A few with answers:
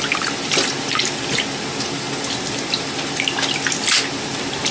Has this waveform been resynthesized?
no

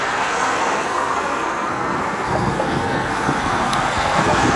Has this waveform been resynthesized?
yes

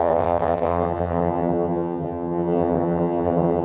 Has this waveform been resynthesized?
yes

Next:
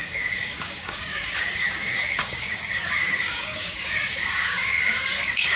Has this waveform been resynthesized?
yes